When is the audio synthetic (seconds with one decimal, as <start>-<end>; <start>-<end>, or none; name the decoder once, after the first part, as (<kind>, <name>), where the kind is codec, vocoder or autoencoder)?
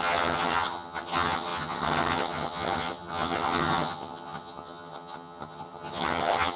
0.0-6.6 (vocoder, HiFi-GAN)